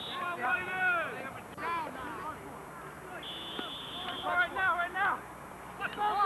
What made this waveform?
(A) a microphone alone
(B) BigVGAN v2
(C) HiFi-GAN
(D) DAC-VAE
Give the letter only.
A